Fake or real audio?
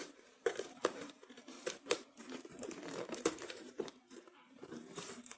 fake